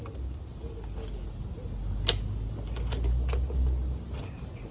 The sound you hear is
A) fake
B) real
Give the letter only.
B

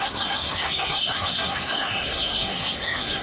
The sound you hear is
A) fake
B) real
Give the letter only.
A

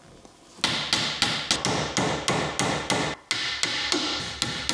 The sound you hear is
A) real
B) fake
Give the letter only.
A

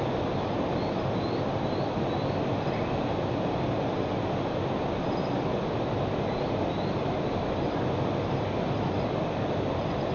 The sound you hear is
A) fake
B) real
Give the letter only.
B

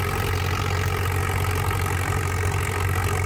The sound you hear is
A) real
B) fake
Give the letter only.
A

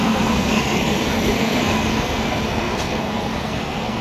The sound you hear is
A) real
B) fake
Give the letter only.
B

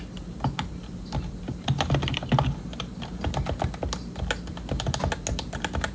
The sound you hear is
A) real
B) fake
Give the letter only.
A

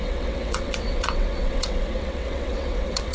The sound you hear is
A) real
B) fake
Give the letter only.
B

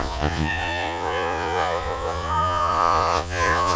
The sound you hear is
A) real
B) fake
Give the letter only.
B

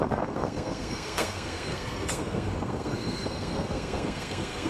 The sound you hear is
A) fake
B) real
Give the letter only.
A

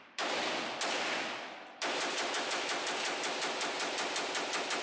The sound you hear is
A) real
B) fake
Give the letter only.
A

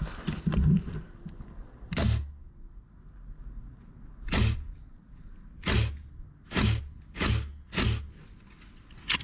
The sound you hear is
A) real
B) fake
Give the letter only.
A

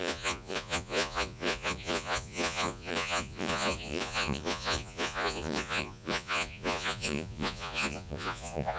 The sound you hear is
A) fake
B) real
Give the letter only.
A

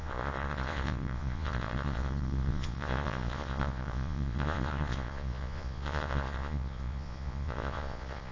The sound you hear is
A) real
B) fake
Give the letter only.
B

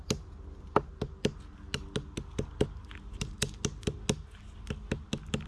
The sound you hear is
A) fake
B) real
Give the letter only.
B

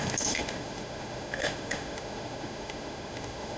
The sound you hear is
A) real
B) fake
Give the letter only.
B